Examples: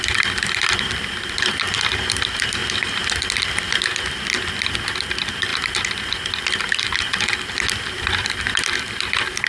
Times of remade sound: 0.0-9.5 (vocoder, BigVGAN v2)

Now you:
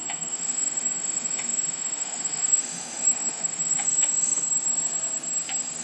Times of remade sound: 0.0-4.4 (autoencoder, DAC-VAE)

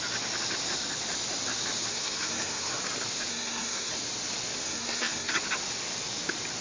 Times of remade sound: 1.9-2.7 (codec, SNAC); 3.3-3.9; 4.6-5.3

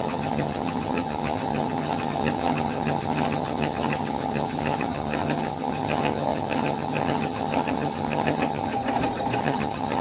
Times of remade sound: 0.0-8.7 (vocoder, HiFi-GAN); 9.4-10.0

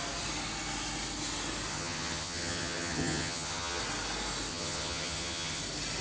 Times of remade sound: 1.7-3.8 (vocoder, HiFi-GAN); 4.5-5.6

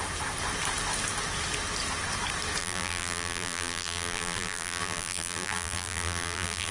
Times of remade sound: 2.6-6.7 (vocoder, BigVGAN v2)

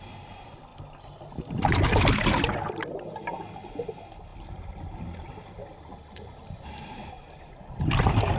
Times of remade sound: none

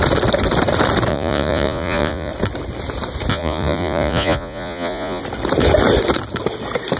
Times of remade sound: 1.1-2.3 (vocoder, Vocos); 3.3-5.2